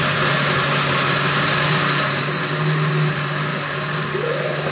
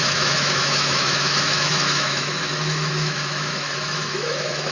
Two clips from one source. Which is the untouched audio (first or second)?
first